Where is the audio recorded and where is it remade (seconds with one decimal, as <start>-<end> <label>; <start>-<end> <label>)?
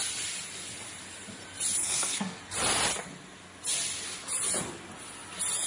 0.0-1.8 recorded; 1.8-2.4 remade; 2.4-5.7 recorded